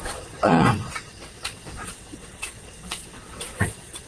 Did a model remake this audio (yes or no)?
yes